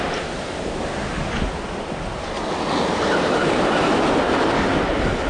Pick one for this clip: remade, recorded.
recorded